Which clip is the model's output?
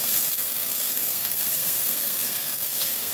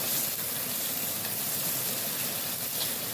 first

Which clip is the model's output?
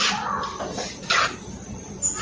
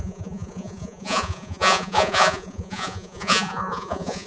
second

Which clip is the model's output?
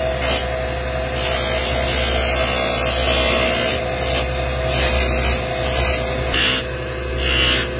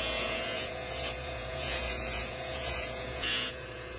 second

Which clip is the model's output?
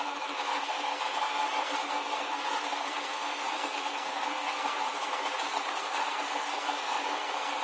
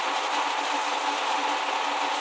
first